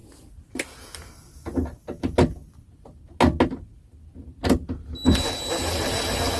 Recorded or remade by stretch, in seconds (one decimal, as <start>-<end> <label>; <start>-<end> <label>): 0.0-6.4 recorded

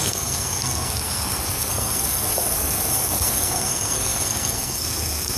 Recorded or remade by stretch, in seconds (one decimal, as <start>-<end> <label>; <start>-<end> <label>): 0.0-5.4 remade

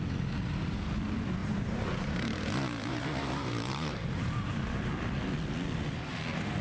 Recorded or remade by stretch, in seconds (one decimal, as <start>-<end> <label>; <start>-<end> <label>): 0.0-1.4 recorded; 1.4-4.6 remade; 4.6-6.6 recorded

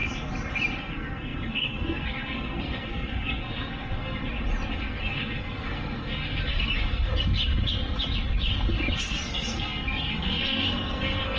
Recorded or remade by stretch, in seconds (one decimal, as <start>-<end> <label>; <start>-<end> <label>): 0.0-0.8 recorded; 0.8-4.2 remade; 4.2-4.7 recorded; 4.7-7.1 remade; 7.1-9.0 recorded; 9.0-11.4 remade